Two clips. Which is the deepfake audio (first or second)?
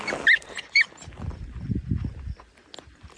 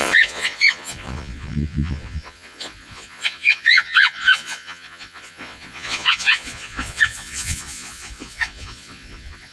second